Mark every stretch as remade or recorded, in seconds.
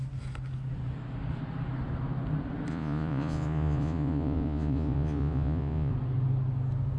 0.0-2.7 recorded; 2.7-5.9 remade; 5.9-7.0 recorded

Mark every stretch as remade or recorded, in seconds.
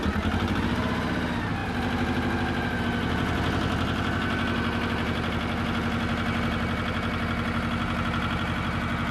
0.0-9.1 recorded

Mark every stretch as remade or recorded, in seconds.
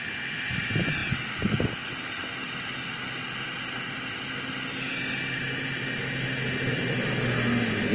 0.0-7.9 recorded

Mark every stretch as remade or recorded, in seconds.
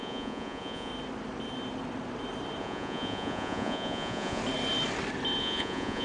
0.0-0.9 remade; 0.9-2.6 recorded; 2.6-4.4 remade; 4.4-5.4 recorded; 5.4-6.0 remade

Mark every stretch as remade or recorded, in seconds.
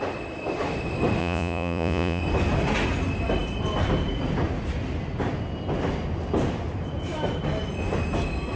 0.0-1.2 recorded; 1.2-2.2 remade; 2.2-8.6 recorded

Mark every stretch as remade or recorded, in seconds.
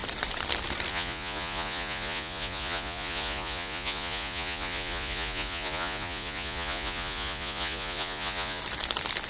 0.0-0.9 recorded; 0.9-8.6 remade; 8.6-9.3 recorded